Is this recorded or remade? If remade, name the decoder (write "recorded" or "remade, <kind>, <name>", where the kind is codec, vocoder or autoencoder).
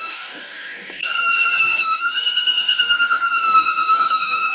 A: remade, codec, DAC